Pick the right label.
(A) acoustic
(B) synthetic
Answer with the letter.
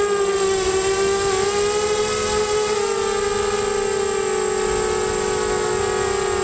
A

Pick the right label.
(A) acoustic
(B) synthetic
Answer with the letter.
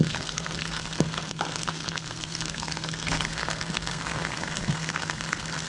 B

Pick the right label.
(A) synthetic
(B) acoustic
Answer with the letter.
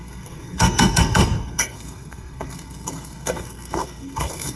A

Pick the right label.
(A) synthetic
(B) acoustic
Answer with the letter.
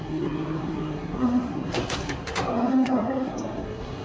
A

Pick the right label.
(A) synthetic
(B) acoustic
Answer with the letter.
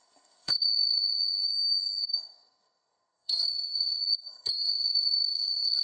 A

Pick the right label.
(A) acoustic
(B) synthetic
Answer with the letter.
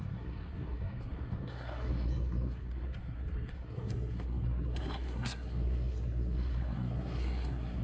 B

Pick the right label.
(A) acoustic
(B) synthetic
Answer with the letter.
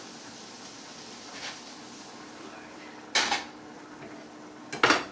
A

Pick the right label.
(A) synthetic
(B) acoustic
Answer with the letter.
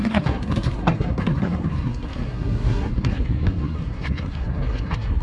A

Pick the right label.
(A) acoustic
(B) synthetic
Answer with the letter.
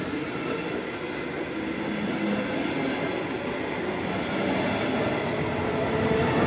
A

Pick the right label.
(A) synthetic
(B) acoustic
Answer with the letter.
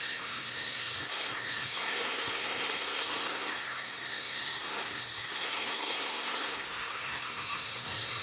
A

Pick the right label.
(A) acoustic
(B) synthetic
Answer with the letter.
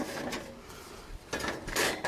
A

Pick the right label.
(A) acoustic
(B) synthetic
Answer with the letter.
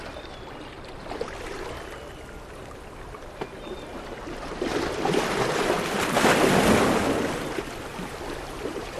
A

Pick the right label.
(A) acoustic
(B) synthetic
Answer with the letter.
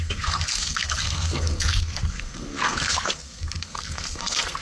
B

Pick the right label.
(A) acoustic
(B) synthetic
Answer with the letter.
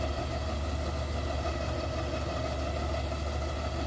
A